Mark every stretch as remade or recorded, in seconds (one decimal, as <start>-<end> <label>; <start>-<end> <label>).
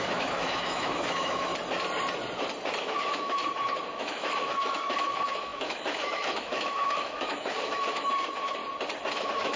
0.0-1.5 remade; 1.5-2.8 recorded; 2.8-3.4 remade; 3.4-4.0 recorded; 4.0-8.6 remade; 8.6-9.1 recorded; 9.1-9.6 remade